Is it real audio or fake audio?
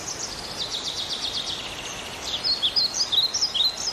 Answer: real